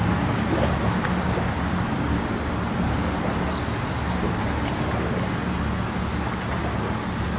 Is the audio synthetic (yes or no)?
no